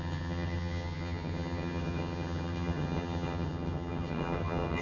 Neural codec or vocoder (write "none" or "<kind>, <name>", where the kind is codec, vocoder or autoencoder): vocoder, HiFi-GAN